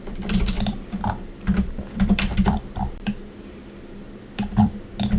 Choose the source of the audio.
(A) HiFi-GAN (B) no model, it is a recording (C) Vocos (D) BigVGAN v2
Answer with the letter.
D